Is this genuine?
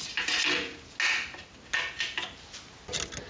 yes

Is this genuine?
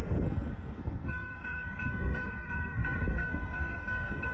no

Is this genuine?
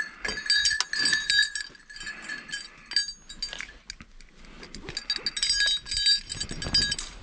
yes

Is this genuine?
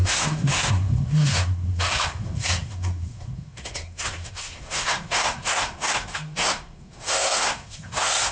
no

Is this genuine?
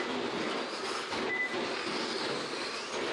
yes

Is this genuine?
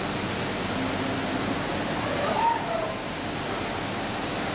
yes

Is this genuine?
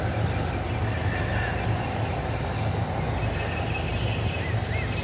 yes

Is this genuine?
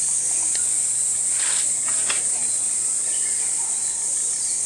yes